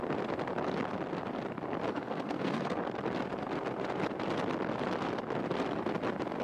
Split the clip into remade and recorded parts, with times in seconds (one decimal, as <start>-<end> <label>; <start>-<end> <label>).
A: 0.0-1.9 recorded; 1.9-2.8 remade; 2.8-6.4 recorded